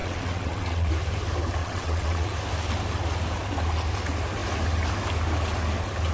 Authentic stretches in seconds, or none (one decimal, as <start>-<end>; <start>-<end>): 0.9-1.6; 2.3-6.1